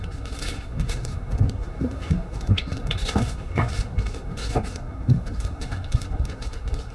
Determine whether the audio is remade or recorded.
remade